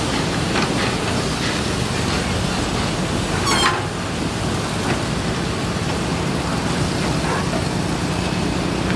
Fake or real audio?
real